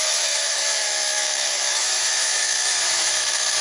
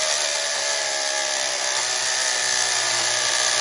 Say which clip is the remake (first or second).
first